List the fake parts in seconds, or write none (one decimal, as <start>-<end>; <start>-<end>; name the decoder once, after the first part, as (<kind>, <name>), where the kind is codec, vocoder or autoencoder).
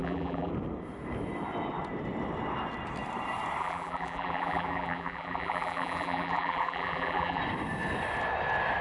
0.0-0.5 (vocoder, BigVGAN v2); 3.6-7.4